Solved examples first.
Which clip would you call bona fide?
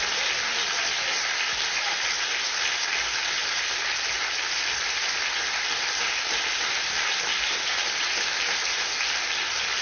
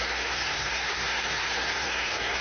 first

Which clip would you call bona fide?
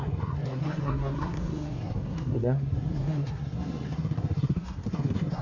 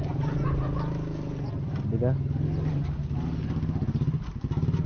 second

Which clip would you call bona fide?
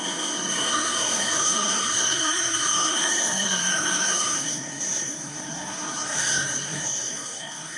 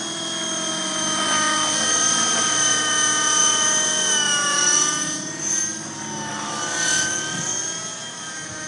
second